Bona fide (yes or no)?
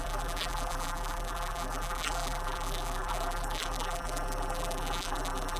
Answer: no